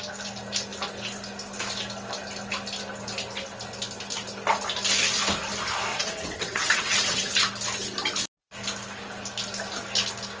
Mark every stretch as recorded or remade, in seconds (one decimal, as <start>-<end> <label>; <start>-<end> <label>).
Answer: 0.0-5.9 recorded; 5.9-7.3 remade; 7.3-10.4 recorded